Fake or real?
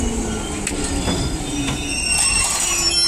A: real